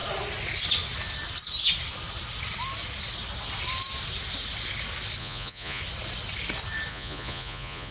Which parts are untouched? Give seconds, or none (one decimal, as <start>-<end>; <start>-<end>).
0.0-5.2; 5.8-6.9